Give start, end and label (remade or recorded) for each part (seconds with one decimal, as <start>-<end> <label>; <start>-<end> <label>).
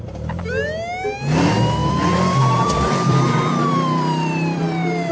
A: 0.0-1.8 recorded; 1.8-5.1 remade